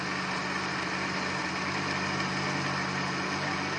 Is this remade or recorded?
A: recorded